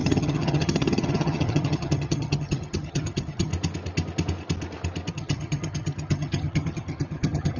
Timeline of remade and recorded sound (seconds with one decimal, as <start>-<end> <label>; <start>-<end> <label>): 0.0-3.5 remade; 3.5-5.1 recorded; 5.1-7.6 remade